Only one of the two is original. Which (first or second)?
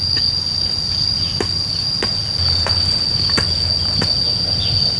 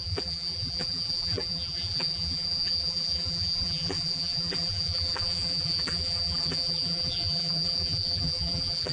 first